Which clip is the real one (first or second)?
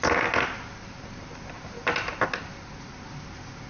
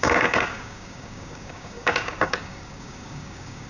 first